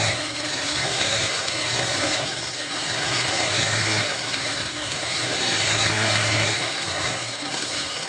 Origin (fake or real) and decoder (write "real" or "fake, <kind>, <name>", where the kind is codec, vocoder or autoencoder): fake, codec, SNAC